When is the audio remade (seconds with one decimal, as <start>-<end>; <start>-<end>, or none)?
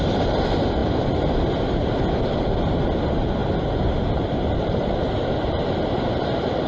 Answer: none